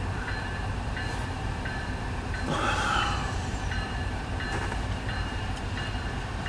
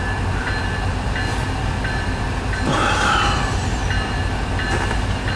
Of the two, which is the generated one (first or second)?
first